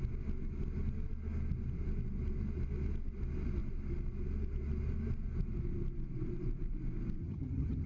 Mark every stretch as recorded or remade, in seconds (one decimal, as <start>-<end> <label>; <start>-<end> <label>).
0.0-7.2 recorded; 7.2-7.9 remade